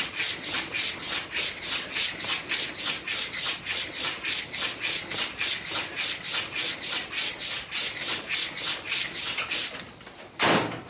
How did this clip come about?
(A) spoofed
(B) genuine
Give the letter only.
B